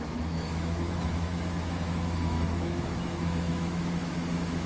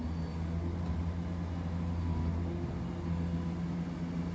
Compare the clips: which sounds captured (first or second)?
second